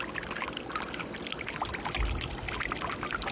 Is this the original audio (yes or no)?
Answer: yes